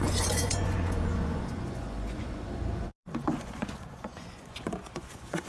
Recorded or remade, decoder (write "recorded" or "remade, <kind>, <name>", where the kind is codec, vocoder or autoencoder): remade, vocoder, Vocos